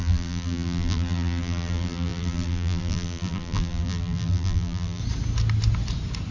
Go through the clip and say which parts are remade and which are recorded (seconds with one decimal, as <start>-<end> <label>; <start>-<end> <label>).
0.0-5.0 remade; 5.0-6.3 recorded